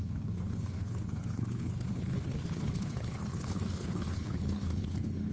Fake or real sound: fake